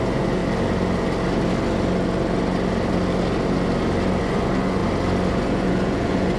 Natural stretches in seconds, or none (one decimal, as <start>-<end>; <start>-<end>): 0.4-4.2; 4.8-5.3